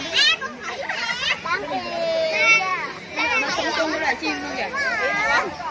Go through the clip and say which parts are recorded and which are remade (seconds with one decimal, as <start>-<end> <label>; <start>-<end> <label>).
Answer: 0.0-2.7 recorded; 2.7-4.2 remade; 4.2-5.7 recorded